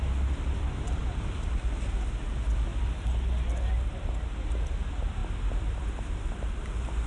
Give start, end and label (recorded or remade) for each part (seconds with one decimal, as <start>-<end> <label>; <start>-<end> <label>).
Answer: 0.0-7.1 recorded